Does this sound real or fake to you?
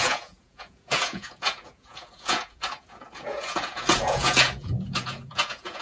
fake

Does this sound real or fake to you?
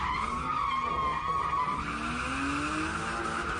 real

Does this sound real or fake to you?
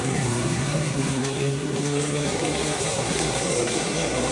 fake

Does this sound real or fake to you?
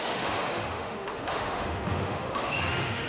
fake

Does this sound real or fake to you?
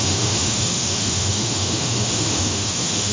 fake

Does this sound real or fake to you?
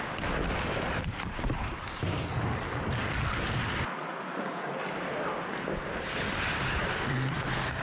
real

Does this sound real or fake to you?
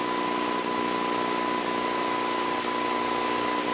real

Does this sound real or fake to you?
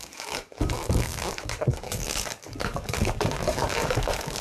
fake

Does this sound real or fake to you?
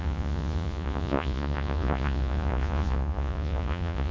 fake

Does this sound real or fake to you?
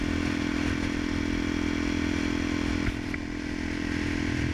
real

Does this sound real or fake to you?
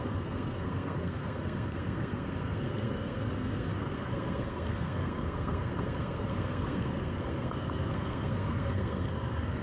fake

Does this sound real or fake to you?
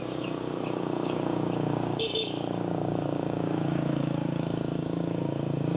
fake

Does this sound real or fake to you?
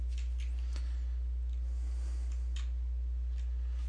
real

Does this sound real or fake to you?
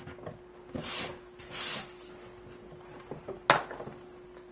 real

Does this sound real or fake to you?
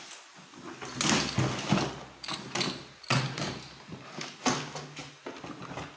real